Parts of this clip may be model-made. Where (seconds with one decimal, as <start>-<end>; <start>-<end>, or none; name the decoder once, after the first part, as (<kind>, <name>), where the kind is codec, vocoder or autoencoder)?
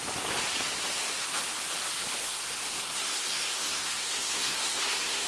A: 2.2-5.3 (codec, SNAC)